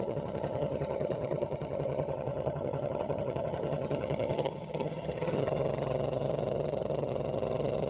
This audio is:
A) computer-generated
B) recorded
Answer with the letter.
A